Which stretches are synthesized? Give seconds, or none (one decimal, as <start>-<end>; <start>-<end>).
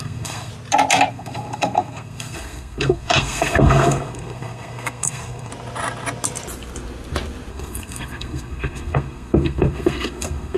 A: 0.0-0.5; 1.1-5.5; 7.5-10.6